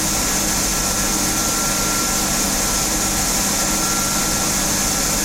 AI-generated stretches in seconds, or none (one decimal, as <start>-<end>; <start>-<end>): none